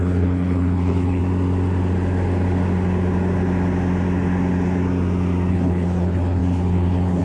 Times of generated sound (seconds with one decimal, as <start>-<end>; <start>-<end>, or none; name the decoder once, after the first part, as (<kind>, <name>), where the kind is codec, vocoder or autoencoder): 0.0-1.2 (codec, HILCodec); 5.5-7.2